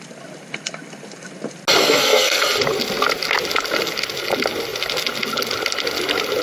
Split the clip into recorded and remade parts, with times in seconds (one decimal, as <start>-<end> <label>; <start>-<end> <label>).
0.0-1.8 recorded; 1.8-2.4 remade; 2.4-6.4 recorded